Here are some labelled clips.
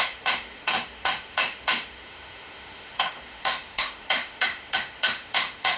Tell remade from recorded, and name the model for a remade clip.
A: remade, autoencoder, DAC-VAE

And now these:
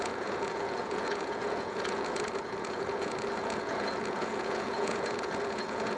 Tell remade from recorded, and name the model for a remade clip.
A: remade, vocoder, Vocos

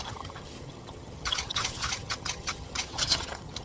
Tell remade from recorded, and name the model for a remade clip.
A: remade, vocoder, HiFi-GAN